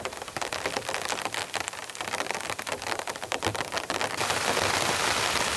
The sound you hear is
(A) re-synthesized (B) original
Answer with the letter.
B